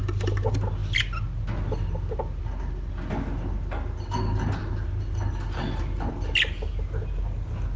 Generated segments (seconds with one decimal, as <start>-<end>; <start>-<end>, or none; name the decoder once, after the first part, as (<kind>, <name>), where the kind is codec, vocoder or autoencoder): none